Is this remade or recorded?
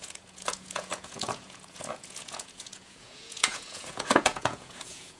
remade